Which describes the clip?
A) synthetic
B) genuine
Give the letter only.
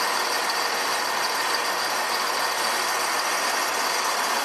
B